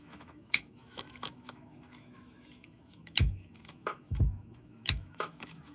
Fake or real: fake